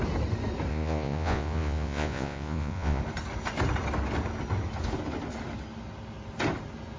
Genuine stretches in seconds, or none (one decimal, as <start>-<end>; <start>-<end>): 0.0-0.7; 3.0-7.0